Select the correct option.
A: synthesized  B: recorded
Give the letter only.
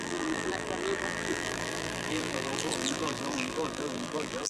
A